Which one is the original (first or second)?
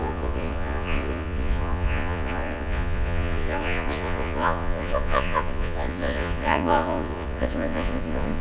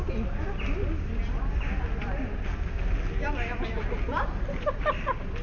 second